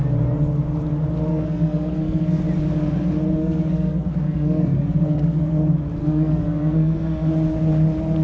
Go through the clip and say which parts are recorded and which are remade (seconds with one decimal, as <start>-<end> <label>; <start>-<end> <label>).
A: 0.0-1.3 recorded; 1.3-2.4 remade; 2.4-3.4 recorded; 3.4-5.6 remade; 5.6-6.0 recorded; 6.0-7.3 remade; 7.3-8.2 recorded